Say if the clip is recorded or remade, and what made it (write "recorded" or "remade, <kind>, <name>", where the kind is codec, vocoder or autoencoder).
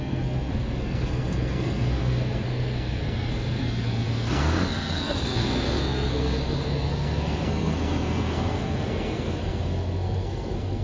remade, codec, SNAC